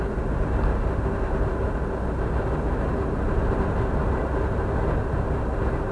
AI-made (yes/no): no